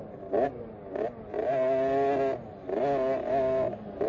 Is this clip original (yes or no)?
yes